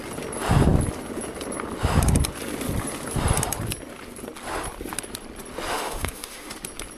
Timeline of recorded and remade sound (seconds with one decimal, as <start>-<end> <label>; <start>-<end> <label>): 0.0-5.7 recorded; 5.7-6.5 remade; 6.5-7.0 recorded